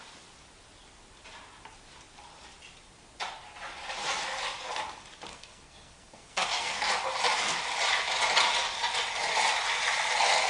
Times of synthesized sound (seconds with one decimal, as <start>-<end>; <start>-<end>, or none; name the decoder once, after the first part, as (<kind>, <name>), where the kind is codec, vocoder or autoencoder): 5.3-6.9 (codec, SNAC)